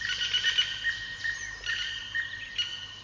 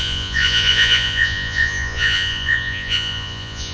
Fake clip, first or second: second